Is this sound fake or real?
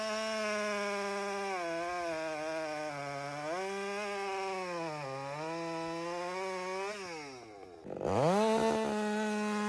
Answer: real